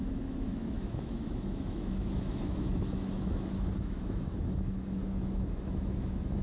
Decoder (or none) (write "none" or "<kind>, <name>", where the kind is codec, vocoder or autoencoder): autoencoder, DAC-VAE